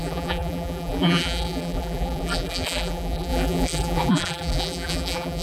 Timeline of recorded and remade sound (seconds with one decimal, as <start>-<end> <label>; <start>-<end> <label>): 0.0-5.4 remade